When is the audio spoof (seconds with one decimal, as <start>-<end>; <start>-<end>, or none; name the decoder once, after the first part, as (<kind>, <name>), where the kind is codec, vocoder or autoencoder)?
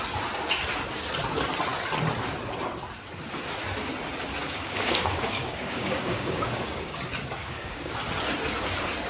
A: 4.4-7.0 (codec, DAC); 7.4-7.9